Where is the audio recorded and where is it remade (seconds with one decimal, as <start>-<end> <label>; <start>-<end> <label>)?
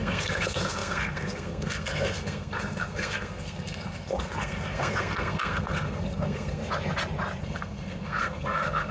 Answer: 0.0-6.6 remade; 6.6-7.4 recorded; 7.4-8.9 remade